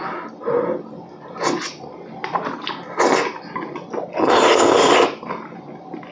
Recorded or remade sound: recorded